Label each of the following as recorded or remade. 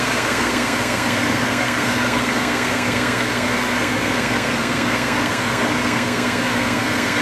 remade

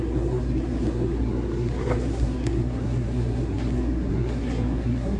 remade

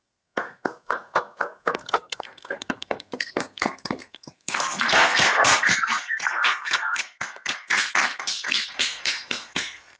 remade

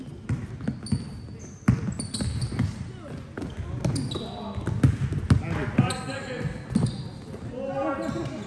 recorded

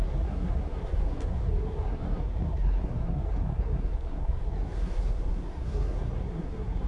remade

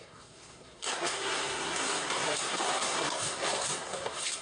remade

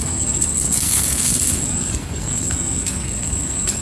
remade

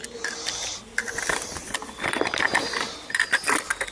recorded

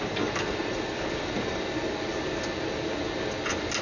recorded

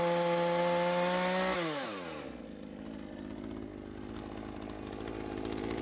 recorded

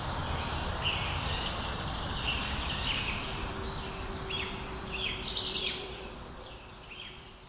recorded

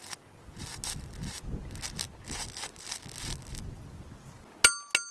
recorded